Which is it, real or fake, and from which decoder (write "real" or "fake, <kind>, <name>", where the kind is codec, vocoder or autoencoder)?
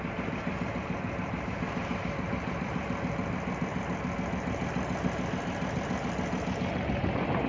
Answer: real